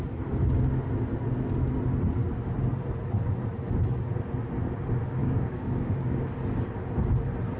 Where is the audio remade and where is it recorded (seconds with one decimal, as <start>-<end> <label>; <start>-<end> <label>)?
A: 0.0-5.2 recorded; 5.2-6.2 remade; 6.2-7.6 recorded